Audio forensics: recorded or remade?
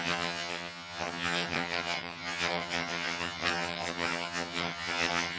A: remade